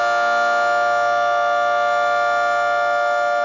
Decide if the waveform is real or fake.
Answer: real